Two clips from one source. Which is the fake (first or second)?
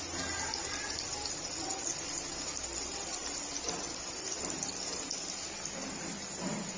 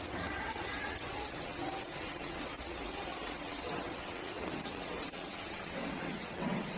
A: second